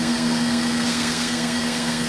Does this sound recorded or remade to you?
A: remade